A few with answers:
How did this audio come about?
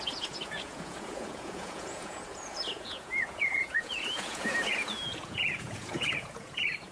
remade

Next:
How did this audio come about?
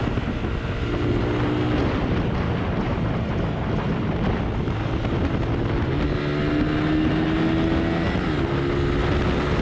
recorded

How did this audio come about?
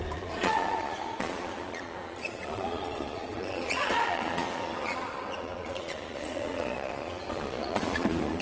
remade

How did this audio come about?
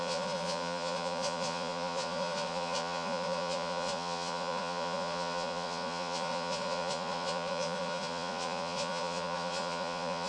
remade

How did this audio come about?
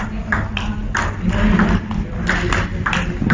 recorded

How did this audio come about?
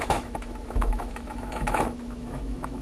remade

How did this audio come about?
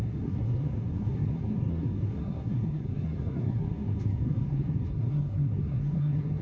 remade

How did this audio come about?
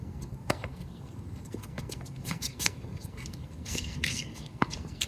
remade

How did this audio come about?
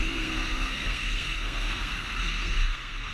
remade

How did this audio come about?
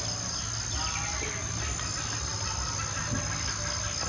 recorded